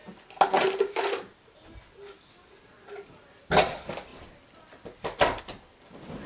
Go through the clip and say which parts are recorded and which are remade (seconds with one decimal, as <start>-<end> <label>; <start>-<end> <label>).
0.0-6.3 recorded